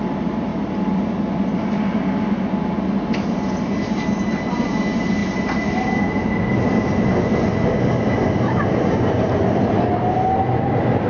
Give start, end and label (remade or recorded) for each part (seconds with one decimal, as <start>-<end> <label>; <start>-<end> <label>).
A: 0.0-11.1 recorded